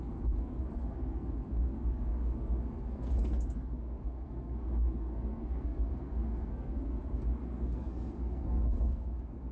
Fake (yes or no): yes